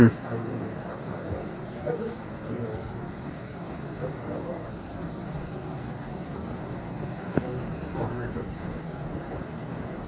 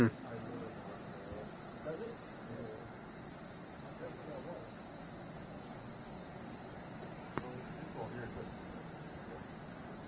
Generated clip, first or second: first